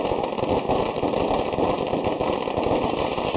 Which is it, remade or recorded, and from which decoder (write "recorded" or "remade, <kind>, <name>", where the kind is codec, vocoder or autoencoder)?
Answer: recorded